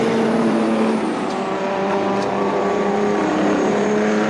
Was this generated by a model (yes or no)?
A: yes